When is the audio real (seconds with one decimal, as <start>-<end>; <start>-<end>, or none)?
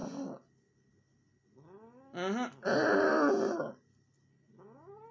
0.0-5.1